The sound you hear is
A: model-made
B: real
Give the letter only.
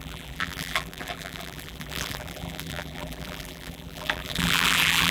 A